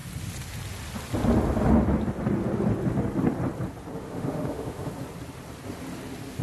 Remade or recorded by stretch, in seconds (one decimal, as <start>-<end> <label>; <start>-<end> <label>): 0.0-4.0 recorded; 4.0-4.9 remade; 4.9-6.4 recorded